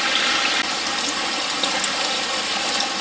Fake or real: real